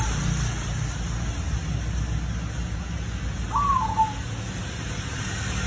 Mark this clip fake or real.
real